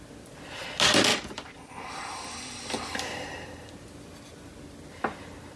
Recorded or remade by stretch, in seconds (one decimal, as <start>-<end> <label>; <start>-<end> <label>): 0.0-1.1 recorded; 1.1-2.7 remade; 2.7-5.6 recorded